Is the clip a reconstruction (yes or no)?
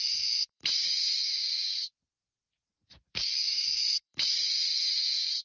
yes